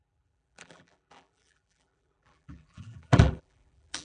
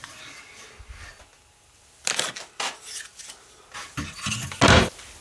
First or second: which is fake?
first